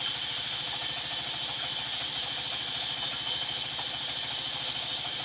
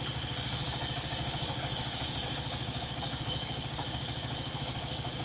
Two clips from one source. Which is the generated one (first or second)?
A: second